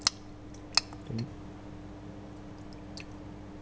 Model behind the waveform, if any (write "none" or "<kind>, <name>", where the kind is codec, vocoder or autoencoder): none